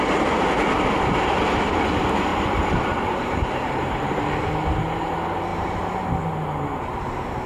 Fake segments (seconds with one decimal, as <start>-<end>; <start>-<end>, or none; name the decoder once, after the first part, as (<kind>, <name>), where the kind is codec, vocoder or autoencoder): 2.3-4.0 (vocoder, BigVGAN v2); 5.5-6.1